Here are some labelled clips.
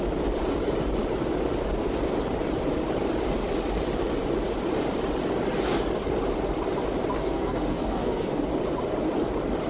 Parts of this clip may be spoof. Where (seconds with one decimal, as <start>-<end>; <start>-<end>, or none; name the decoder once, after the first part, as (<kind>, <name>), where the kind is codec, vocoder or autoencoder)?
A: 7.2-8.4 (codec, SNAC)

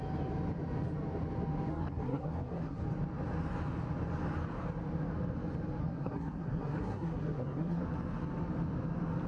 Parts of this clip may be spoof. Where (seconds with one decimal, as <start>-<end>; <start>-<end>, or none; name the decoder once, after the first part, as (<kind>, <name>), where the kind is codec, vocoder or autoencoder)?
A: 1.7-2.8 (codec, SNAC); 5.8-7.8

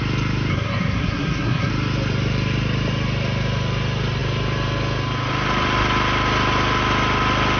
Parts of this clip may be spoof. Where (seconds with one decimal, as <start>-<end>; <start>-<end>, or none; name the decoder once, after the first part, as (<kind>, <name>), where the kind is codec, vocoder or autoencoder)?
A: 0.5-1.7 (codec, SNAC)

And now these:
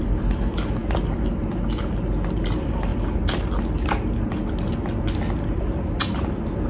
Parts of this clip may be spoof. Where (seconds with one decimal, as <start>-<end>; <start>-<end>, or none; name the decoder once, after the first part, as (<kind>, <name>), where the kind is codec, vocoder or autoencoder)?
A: none